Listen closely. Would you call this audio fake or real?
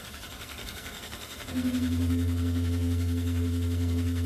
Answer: fake